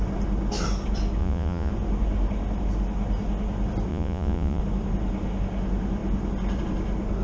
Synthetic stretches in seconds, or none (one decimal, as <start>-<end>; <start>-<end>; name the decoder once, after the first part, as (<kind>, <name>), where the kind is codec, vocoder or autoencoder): 1.2-1.7 (vocoder, Vocos); 3.9-4.6